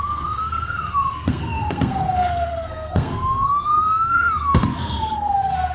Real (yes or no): no